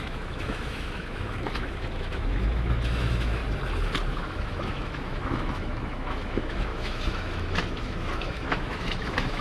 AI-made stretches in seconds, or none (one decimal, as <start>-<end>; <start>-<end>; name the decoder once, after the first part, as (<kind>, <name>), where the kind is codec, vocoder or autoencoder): 0.0-3.4 (autoencoder, DAC-VAE); 4.1-9.4